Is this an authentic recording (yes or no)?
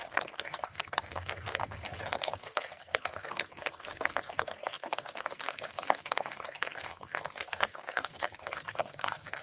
no